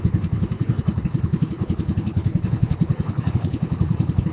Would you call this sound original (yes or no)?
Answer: no